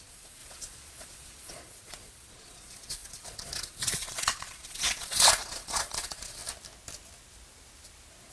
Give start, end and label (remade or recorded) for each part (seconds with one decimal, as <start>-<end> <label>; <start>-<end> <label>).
0.0-6.4 remade; 6.4-8.3 recorded